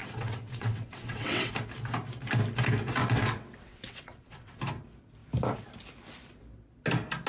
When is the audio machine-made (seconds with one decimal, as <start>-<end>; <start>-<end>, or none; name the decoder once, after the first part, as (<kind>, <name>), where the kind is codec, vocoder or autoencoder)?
0.0-1.5 (vocoder, WaveNeXt); 3.0-4.6